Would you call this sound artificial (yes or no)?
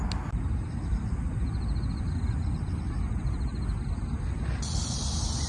no